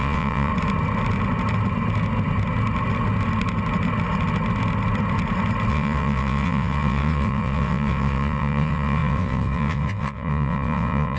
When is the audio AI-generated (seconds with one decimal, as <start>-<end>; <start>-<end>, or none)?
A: 0.0-0.5; 5.7-11.2